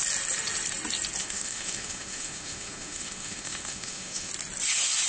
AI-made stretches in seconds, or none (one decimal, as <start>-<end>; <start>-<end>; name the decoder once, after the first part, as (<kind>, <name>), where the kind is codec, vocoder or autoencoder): 1.2-4.3 (autoencoder, DAC-VAE)